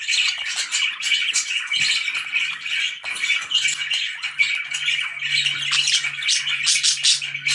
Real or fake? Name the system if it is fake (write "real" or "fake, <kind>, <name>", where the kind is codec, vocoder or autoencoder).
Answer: real